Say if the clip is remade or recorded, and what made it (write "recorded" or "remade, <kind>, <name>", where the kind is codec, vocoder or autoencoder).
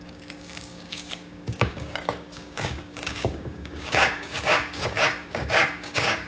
remade, codec, DAC